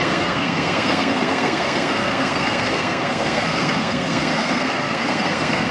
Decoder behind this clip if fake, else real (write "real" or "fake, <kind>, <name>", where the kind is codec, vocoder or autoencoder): fake, codec, SNAC